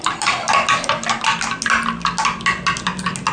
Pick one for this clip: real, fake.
real